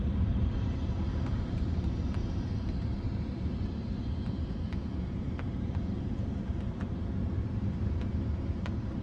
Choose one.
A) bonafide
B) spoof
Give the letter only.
B